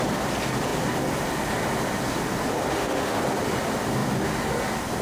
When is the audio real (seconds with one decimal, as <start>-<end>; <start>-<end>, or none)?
0.0-2.7; 3.2-5.0